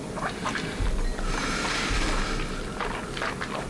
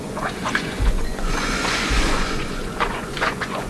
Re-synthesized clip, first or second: second